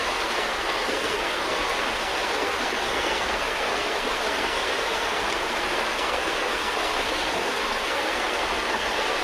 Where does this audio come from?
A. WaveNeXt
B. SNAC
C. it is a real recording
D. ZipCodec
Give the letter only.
B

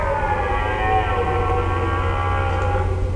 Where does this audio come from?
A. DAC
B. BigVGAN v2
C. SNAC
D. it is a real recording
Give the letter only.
D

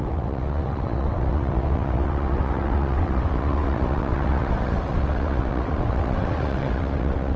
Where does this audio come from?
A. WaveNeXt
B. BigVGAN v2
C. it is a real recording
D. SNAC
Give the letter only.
A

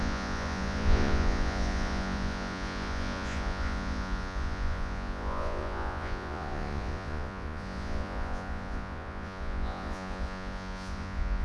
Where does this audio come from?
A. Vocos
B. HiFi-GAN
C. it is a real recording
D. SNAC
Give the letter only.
A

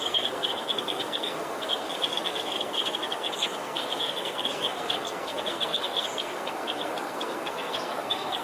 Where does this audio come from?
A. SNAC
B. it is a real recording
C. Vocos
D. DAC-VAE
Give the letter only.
A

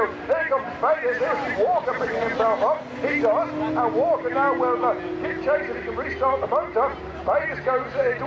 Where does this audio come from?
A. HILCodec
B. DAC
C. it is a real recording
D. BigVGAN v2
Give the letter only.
C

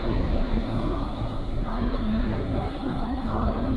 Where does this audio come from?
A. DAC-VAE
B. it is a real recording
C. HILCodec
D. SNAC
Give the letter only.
D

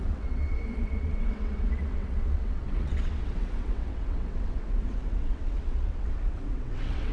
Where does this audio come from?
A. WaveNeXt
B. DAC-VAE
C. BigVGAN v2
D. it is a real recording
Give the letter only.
A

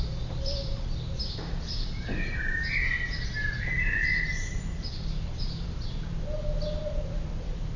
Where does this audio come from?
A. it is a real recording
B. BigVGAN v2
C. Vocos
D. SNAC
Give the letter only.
B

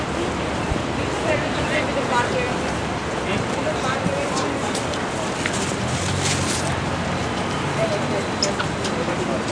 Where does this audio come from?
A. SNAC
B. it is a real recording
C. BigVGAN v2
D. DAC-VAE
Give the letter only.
B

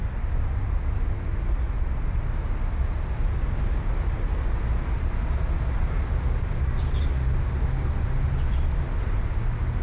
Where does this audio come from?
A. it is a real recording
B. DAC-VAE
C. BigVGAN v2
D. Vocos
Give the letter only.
A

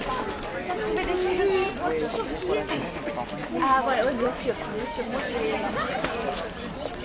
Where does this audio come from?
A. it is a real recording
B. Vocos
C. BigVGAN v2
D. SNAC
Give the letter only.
A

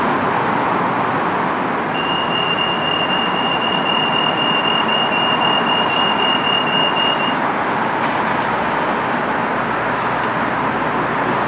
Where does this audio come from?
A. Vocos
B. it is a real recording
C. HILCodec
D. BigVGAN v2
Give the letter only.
B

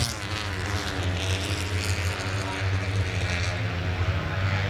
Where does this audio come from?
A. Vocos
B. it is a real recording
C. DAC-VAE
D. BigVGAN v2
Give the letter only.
B